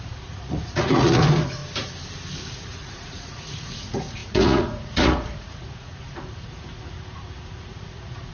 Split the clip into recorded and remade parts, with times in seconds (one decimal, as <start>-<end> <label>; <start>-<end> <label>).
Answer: 0.0-1.6 remade; 1.6-2.5 recorded; 2.5-8.3 remade